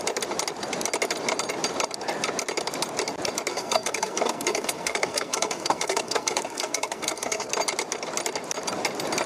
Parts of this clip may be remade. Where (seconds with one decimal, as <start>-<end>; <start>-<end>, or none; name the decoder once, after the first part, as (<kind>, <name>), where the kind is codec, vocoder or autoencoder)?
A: 3.5-7.5 (codec, SNAC)